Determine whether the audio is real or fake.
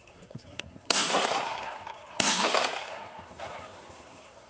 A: fake